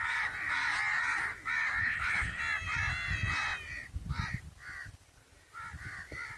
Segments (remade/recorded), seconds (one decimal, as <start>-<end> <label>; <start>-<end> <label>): 0.0-1.8 recorded; 1.8-2.4 remade; 2.4-6.4 recorded